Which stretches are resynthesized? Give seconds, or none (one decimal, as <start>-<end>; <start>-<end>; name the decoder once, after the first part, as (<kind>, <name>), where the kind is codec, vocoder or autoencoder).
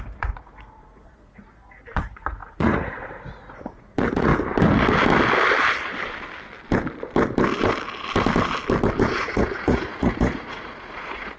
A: 0.0-4.3 (vocoder, Vocos); 9.1-11.4